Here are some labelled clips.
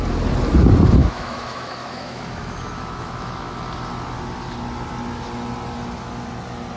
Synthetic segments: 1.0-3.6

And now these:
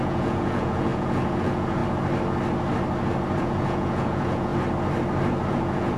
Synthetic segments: 0.0-1.8; 3.4-4.5; 5.5-6.0

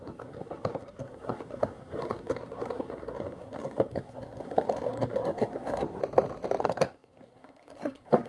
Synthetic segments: 0.0-6.0; 6.6-8.3

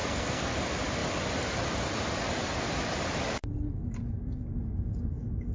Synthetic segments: 0.0-0.5

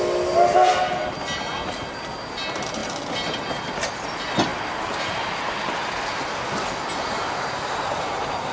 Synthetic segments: none

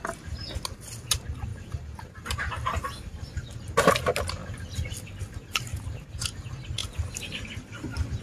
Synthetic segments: 1.5-3.9